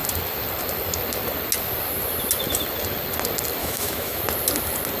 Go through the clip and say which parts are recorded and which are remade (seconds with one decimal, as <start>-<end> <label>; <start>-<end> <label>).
0.0-3.6 recorded; 3.6-4.2 remade; 4.2-5.0 recorded